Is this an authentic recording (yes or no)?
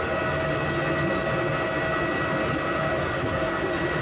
yes